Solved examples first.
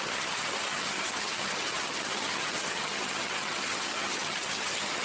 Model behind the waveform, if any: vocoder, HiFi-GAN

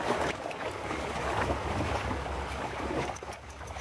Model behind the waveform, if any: codec, DAC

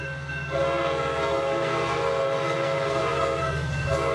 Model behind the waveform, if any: codec, SNAC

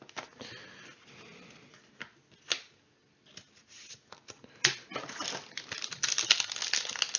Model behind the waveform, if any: none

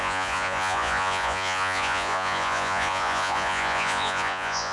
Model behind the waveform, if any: vocoder, Vocos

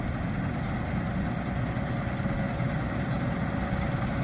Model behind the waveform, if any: none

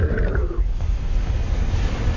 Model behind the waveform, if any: none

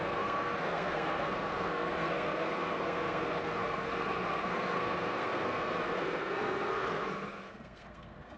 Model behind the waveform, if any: codec, SNAC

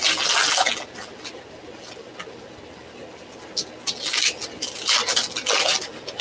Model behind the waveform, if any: none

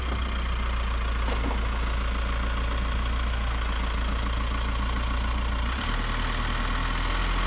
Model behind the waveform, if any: none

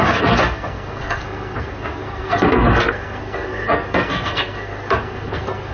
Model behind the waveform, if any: codec, SNAC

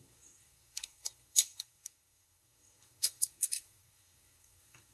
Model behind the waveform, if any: codec, SNAC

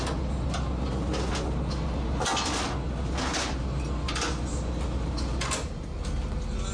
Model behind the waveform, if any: none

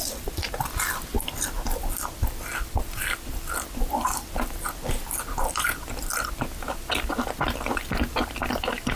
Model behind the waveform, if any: none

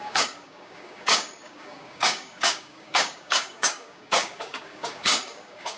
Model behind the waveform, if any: codec, DAC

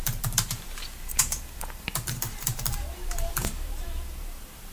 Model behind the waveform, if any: vocoder, BigVGAN v2